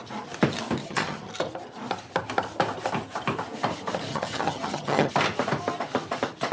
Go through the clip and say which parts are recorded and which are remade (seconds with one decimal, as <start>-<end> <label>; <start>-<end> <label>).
0.0-0.8 recorded; 0.8-1.3 remade; 1.3-4.1 recorded; 4.1-5.1 remade; 5.1-6.5 recorded